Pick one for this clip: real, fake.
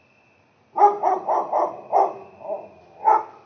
real